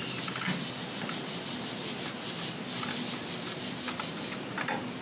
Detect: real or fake real